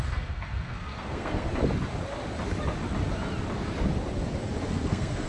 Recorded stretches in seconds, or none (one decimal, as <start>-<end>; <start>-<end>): 1.5-4.7